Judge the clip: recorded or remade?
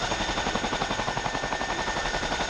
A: recorded